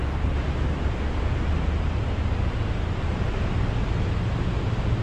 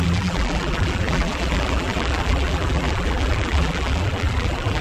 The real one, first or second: first